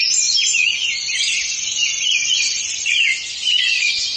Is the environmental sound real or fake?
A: fake